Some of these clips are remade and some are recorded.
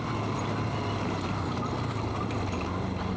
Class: recorded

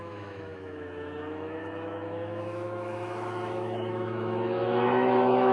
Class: remade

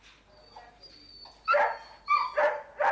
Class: recorded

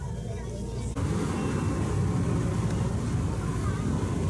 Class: recorded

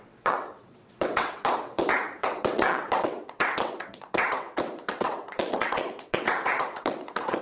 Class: remade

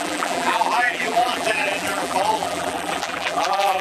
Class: remade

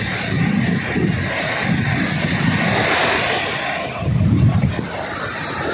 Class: recorded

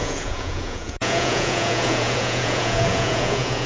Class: remade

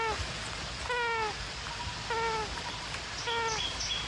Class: recorded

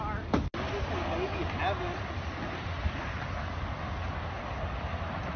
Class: recorded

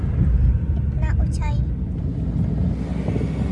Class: recorded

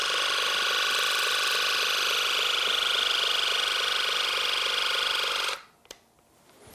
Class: recorded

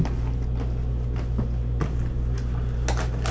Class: recorded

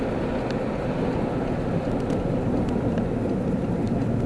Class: recorded